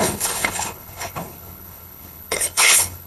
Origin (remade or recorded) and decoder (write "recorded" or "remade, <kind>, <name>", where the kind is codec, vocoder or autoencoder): remade, codec, HILCodec